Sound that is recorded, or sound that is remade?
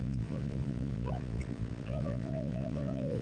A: remade